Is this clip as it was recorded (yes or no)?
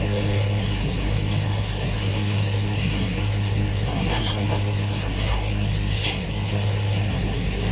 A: no